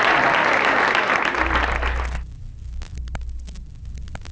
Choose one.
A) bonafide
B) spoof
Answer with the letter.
A